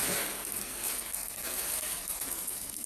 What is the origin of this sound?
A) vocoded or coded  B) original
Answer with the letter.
A